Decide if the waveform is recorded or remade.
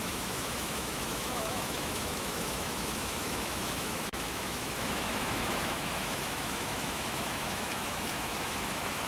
remade